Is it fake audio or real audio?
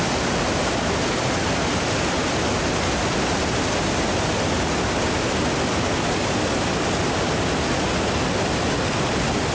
real